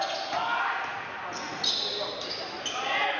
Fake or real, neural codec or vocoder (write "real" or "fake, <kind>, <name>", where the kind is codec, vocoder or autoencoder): real